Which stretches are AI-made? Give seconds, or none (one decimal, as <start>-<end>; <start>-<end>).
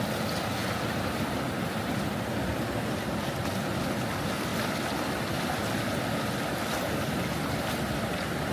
none